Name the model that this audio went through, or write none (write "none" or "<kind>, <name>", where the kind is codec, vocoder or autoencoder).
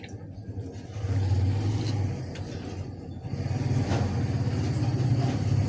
none